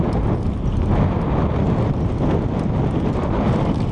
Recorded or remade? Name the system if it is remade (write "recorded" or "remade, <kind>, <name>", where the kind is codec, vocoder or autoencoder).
recorded